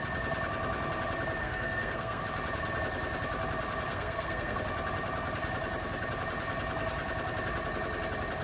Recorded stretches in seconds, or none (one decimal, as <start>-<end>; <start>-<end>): 0.0-1.4; 2.2-3.9; 4.6-8.4